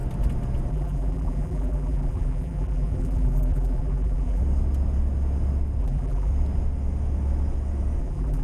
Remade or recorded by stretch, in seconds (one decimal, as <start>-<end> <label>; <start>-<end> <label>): 0.0-0.7 recorded; 0.7-4.4 remade; 4.4-5.8 recorded; 5.8-6.3 remade; 6.3-8.0 recorded; 8.0-8.4 remade